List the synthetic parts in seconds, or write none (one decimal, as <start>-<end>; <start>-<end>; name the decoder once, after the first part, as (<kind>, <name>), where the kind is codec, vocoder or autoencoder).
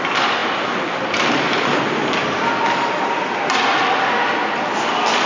none